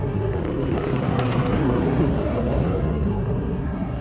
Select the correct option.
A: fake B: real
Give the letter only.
A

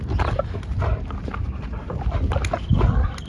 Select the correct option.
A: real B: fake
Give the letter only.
A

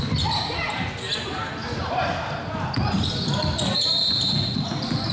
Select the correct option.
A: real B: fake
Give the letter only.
A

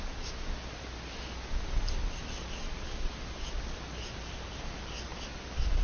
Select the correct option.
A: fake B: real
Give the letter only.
B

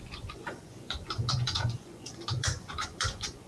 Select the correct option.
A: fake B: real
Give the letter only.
A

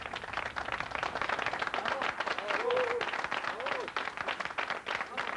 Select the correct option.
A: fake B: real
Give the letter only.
B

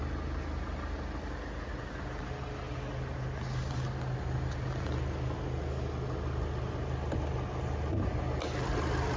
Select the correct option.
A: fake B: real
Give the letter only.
B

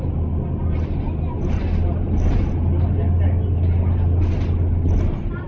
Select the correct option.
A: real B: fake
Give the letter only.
A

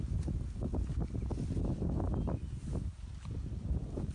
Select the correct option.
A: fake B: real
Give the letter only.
B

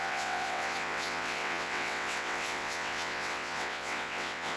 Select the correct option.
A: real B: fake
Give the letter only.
B